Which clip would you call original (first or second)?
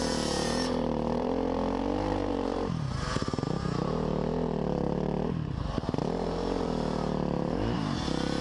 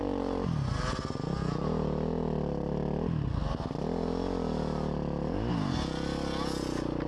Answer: second